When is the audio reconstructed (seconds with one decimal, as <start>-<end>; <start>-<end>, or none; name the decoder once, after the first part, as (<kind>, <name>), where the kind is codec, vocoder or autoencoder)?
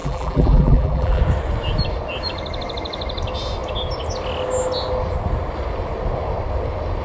0.0-1.2 (vocoder, BigVGAN v2)